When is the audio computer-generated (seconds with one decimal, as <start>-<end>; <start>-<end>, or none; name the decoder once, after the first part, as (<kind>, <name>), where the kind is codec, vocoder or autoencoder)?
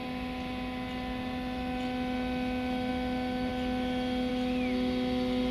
none